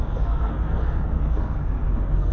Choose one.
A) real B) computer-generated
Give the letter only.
B